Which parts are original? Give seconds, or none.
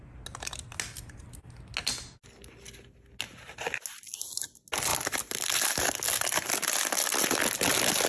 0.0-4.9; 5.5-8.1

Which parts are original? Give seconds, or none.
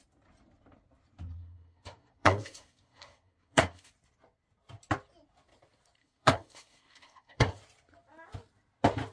0.0-1.4; 3.9-6.0; 7.6-9.1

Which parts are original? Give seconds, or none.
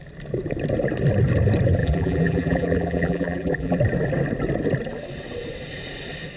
0.0-1.8; 3.8-6.4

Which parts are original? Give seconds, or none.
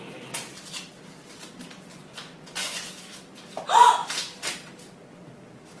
0.0-1.9; 2.9-5.8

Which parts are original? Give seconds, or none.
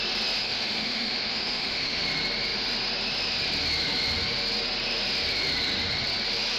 0.0-0.4; 2.0-6.6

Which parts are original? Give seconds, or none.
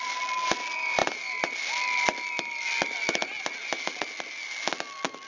0.0-5.3